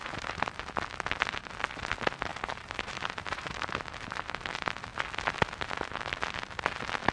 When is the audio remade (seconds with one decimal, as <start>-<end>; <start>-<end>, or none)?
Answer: 0.0-0.6; 2.3-4.5